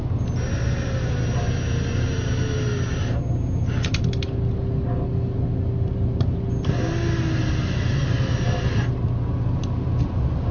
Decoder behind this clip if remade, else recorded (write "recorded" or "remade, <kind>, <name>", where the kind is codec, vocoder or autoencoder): recorded